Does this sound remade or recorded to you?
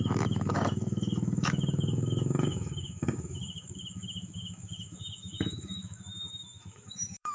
remade